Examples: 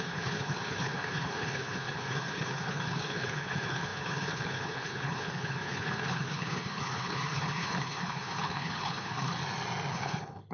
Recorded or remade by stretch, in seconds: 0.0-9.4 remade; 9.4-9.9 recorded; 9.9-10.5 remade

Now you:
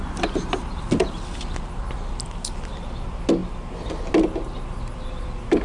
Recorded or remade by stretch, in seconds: 0.0-5.6 recorded